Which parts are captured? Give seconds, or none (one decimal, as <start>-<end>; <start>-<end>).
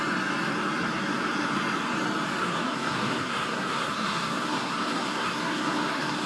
0.0-2.4